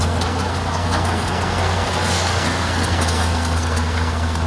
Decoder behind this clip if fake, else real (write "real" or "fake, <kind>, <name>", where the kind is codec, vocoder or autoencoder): fake, codec, SNAC